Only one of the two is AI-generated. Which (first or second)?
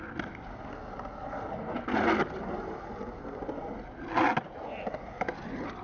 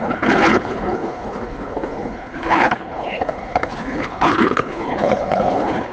second